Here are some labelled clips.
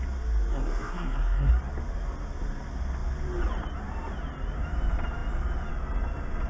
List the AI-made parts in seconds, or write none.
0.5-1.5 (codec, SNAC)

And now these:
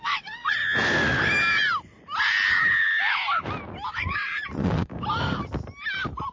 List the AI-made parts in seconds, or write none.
0.0-0.6 (vocoder, WaveNeXt); 3.9-4.9

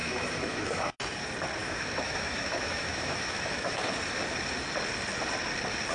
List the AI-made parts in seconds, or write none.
0.0-1.0 (autoencoder, DAC-VAE); 1.6-3.8

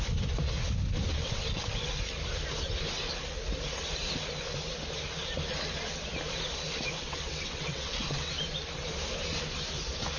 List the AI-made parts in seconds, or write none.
1.1-1.9 (vocoder, WaveNeXt); 7.0-8.3